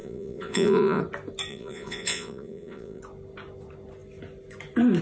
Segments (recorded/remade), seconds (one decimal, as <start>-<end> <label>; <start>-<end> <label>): 0.0-1.0 remade; 1.0-1.5 recorded; 1.5-3.0 remade; 3.0-5.0 recorded